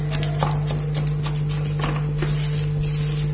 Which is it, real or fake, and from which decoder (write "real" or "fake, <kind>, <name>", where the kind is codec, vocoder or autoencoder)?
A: real